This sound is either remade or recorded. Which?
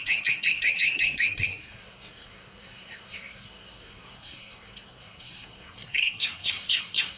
remade